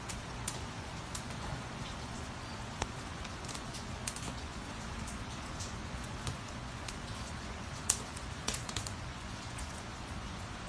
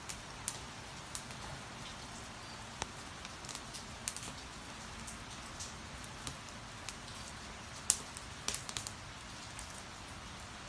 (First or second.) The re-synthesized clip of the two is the first